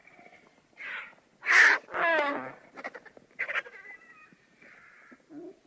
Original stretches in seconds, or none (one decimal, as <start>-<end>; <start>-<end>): 0.0-5.7